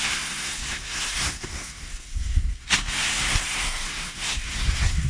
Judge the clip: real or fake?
fake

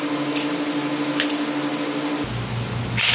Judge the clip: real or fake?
real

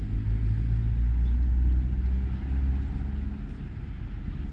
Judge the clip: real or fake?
real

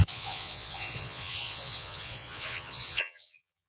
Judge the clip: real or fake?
fake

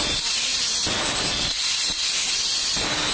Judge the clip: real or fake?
real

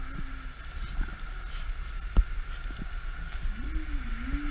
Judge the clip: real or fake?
real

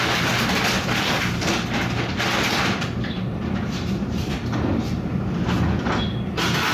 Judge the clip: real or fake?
real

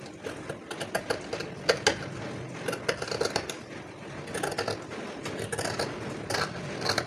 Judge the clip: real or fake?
real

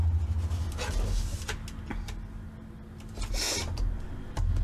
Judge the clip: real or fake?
real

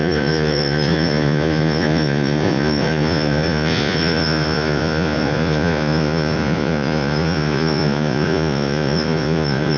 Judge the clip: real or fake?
fake